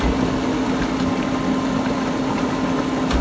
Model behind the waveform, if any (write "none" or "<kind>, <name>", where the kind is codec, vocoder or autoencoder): none